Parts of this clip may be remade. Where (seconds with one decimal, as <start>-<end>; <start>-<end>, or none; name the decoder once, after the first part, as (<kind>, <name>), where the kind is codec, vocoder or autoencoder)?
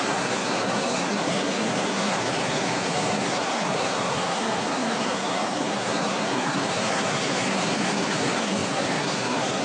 0.0-9.6 (codec, SNAC)